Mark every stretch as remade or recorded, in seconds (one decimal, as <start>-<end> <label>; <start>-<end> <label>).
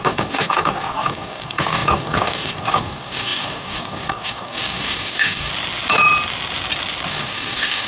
0.0-5.5 remade; 5.5-7.1 recorded; 7.1-7.9 remade